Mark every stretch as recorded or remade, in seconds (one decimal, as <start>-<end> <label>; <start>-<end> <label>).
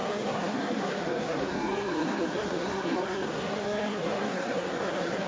0.0-5.3 remade